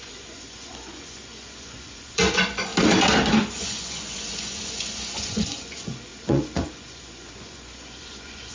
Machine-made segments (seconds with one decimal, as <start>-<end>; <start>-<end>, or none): 0.0-2.7; 3.2-8.5